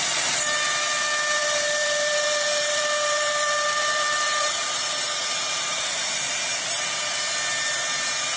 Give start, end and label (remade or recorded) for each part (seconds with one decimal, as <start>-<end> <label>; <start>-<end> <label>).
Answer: 0.0-1.4 recorded; 1.4-6.4 remade; 6.4-8.4 recorded